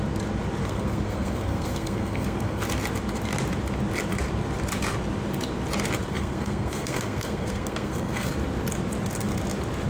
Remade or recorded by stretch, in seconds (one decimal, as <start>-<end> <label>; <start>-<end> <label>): 0.0-0.6 recorded; 0.6-2.6 remade; 2.6-6.1 recorded; 6.1-8.3 remade; 8.3-9.9 recorded